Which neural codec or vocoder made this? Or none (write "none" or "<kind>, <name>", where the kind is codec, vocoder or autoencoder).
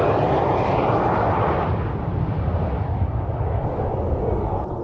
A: none